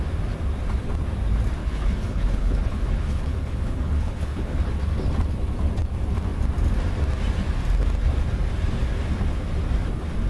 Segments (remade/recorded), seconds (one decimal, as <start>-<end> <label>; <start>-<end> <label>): 0.0-1.6 recorded; 1.6-4.6 remade; 4.6-10.3 recorded